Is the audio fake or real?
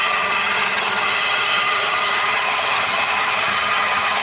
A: fake